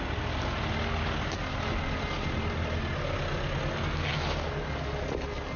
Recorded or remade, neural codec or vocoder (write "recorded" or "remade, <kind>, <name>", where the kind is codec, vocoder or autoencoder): recorded